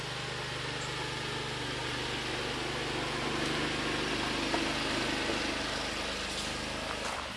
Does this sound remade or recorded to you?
recorded